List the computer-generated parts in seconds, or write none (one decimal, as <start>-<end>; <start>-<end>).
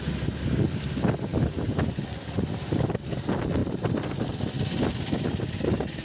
3.6-4.4